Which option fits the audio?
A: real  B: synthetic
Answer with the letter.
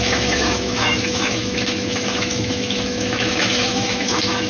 B